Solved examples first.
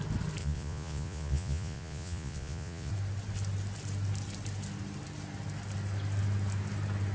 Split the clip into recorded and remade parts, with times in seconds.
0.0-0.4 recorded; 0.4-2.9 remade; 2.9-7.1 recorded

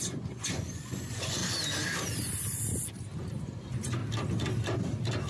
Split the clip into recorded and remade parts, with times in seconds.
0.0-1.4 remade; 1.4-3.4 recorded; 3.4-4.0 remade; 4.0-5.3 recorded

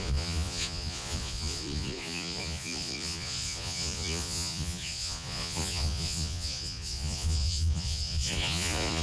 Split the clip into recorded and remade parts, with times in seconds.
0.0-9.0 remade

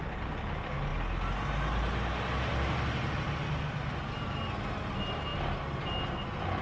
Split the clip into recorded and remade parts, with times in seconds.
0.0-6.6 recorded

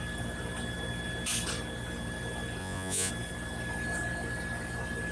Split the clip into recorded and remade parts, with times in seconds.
0.0-2.6 recorded; 2.6-3.1 remade; 3.1-5.1 recorded

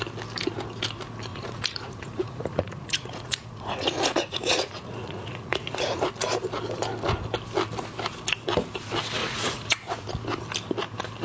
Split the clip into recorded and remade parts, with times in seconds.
0.0-1.3 recorded; 1.3-6.1 remade; 6.1-9.2 recorded; 9.2-10.1 remade; 10.1-11.2 recorded

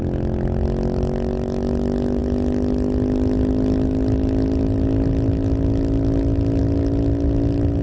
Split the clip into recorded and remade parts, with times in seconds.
0.0-7.8 recorded